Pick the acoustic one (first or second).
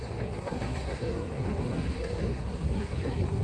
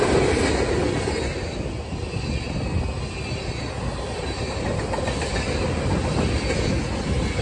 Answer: second